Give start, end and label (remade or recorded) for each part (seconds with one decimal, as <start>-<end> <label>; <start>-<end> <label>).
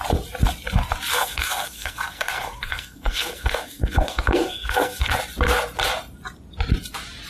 0.0-1.1 recorded; 1.1-5.1 remade; 5.1-7.3 recorded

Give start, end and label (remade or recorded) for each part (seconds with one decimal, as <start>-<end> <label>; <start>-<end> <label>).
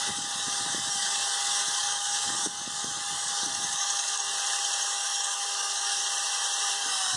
0.0-4.2 remade; 4.2-4.9 recorded; 4.9-6.0 remade; 6.0-6.7 recorded; 6.7-7.2 remade